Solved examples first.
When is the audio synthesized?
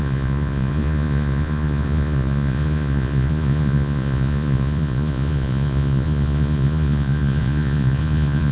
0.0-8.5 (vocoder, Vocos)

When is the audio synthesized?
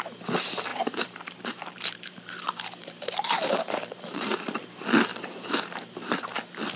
0.7-2.3 (vocoder, BigVGAN v2); 2.8-4.6; 5.1-6.2